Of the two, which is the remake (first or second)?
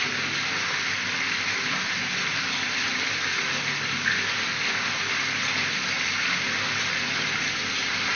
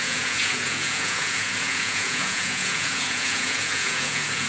second